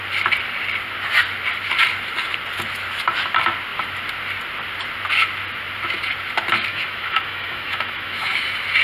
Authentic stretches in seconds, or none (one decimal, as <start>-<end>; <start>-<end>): 0.0-6.7; 8.4-8.8